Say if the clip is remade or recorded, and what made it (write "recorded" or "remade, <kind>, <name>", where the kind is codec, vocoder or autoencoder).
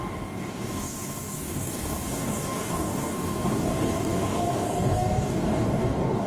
remade, codec, DAC